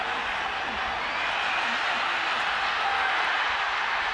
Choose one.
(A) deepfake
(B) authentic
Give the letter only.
B